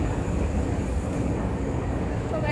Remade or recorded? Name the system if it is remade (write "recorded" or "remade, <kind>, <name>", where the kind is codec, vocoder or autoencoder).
remade, codec, DAC